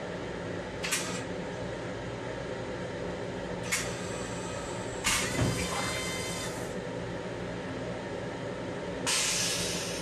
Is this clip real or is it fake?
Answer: real